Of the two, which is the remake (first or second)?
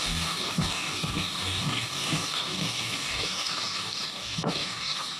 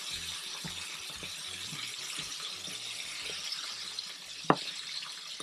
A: first